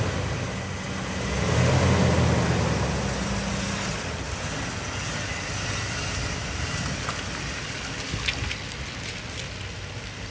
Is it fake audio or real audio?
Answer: real